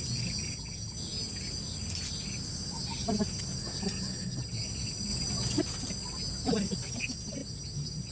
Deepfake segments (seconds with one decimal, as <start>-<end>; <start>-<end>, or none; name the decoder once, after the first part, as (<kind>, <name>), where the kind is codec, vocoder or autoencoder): none

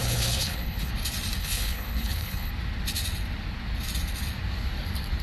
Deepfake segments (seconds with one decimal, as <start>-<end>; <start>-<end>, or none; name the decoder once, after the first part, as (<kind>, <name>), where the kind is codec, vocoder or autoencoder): 0.0-0.9 (codec, HILCodec); 1.4-2.5